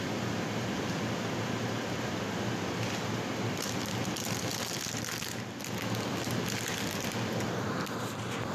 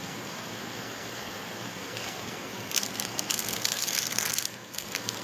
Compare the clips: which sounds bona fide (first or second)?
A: first